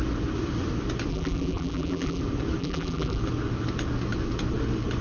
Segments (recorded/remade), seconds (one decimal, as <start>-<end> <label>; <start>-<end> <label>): 0.0-1.1 recorded; 1.1-2.2 remade; 2.2-2.6 recorded; 2.6-3.2 remade; 3.2-5.0 recorded